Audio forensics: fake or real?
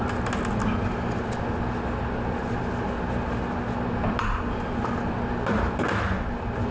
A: real